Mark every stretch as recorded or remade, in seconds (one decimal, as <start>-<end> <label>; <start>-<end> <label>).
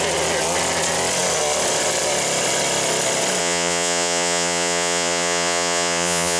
0.0-3.4 recorded; 3.4-6.4 remade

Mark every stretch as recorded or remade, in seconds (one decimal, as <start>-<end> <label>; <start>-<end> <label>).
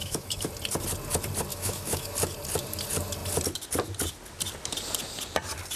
0.0-0.5 remade; 0.5-1.5 recorded; 1.5-2.1 remade; 2.1-5.8 recorded